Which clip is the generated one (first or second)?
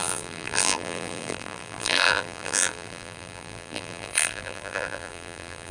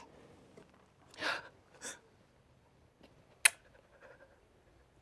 first